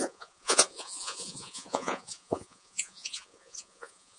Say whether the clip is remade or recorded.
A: remade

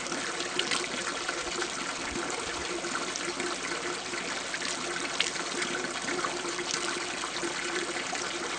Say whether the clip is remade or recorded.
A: recorded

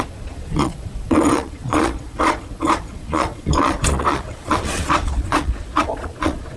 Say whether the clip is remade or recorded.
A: remade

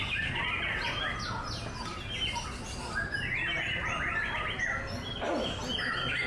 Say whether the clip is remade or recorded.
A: recorded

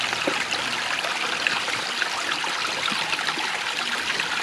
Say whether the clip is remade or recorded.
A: recorded